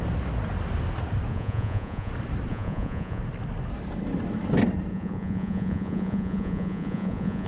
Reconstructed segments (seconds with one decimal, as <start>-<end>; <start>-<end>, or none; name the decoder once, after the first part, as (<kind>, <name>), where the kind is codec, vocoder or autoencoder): 1.3-2.1 (vocoder, Vocos); 2.5-3.2; 4.9-7.5